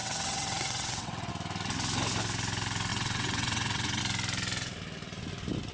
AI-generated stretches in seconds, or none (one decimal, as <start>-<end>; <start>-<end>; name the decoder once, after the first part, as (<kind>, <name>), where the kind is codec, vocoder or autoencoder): 0.0-1.3 (vocoder, WaveNeXt); 2.9-4.0